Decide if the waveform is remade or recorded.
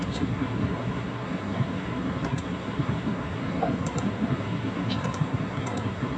remade